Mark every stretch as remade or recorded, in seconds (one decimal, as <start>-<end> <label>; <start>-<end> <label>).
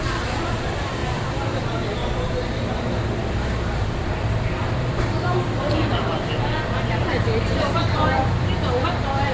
0.0-1.0 remade; 1.0-1.6 recorded; 1.6-5.8 remade; 5.8-7.0 recorded; 7.0-9.3 remade